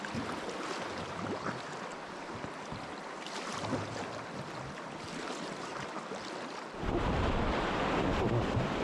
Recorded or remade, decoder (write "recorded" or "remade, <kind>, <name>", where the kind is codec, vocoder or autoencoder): recorded